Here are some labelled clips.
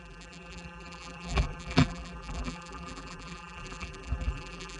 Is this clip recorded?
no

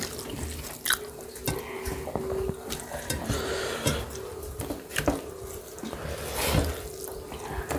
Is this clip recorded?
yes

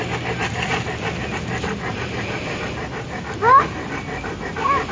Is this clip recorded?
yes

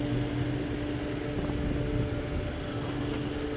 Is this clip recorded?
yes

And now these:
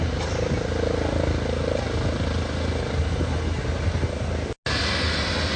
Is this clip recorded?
yes